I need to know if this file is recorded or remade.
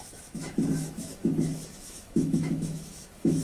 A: remade